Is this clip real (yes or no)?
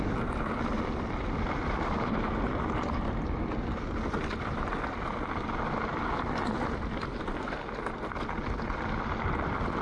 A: yes